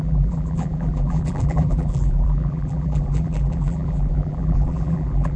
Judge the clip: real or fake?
fake